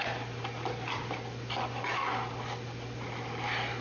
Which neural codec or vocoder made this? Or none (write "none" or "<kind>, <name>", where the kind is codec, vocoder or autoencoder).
none